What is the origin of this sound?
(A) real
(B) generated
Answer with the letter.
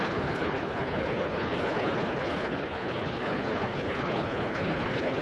B